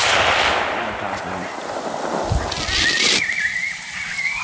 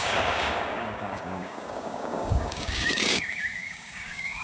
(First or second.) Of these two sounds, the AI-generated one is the second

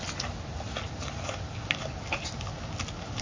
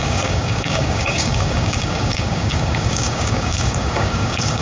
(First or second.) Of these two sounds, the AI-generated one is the second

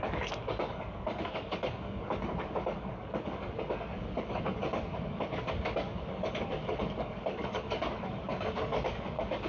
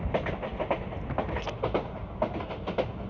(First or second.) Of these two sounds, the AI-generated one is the first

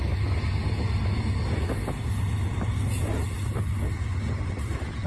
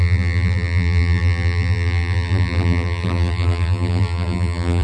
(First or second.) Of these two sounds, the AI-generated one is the second